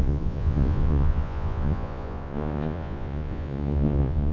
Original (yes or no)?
no